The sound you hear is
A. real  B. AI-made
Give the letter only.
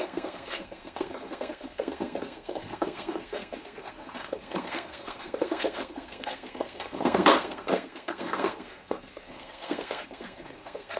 B